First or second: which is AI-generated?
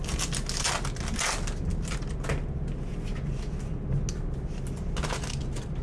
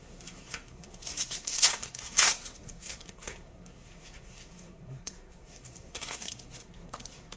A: second